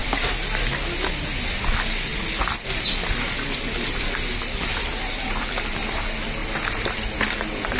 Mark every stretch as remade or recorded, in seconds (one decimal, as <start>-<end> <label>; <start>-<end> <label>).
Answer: 0.0-7.8 recorded

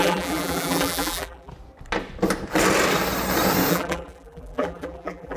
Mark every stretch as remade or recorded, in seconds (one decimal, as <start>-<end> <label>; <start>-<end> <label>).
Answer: 0.0-1.5 remade; 1.5-3.7 recorded; 3.7-5.4 remade

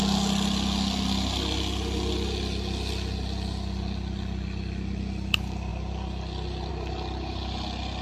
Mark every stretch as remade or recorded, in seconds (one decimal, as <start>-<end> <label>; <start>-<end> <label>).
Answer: 0.0-8.0 recorded

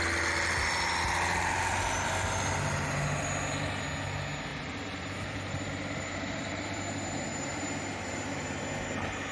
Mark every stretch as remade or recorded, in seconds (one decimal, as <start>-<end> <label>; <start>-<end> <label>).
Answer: 0.0-4.5 recorded; 4.5-8.6 remade; 8.6-9.3 recorded

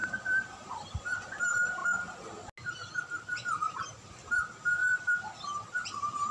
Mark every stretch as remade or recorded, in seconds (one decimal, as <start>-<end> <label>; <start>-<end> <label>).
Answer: 0.0-1.0 remade; 1.0-4.8 recorded; 4.8-6.3 remade